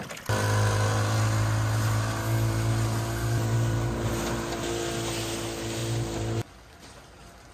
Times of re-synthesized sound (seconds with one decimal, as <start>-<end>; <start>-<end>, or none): none